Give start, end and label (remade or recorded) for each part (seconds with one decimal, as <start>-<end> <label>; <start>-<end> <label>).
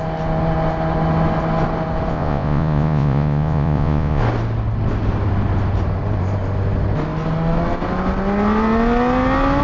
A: 0.0-2.1 recorded; 2.1-4.2 remade; 4.2-9.6 recorded